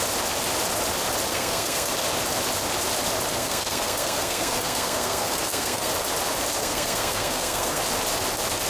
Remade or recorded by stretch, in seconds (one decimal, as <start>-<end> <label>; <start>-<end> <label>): 0.0-1.3 recorded; 1.3-1.9 remade; 1.9-3.3 recorded; 3.3-5.9 remade; 5.9-6.6 recorded; 6.6-7.8 remade; 7.8-8.7 recorded